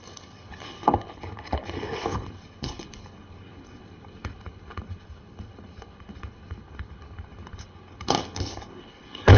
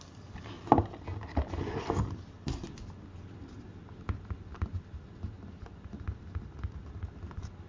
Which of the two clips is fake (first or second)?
first